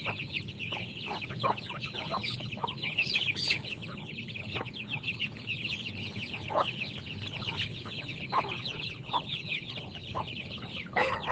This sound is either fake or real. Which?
fake